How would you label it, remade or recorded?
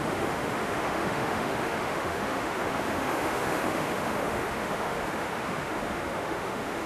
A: remade